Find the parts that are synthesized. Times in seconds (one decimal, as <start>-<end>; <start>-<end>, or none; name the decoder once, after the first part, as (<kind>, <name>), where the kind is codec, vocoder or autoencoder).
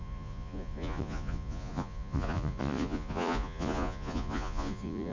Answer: 0.0-5.1 (vocoder, Vocos)